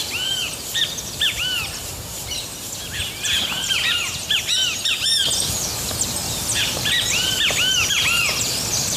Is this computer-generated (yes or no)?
yes